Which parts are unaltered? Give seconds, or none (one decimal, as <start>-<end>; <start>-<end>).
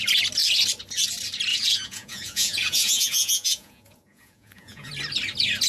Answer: 0.0-1.5; 4.9-5.7